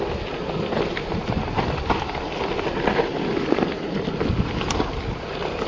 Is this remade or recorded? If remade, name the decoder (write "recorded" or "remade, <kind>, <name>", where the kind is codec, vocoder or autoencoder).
recorded